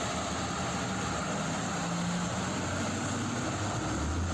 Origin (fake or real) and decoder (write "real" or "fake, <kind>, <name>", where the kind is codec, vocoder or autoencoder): real